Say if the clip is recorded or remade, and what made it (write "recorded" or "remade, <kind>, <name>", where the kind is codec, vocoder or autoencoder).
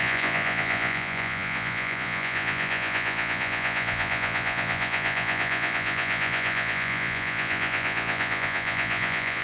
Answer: remade, vocoder, Vocos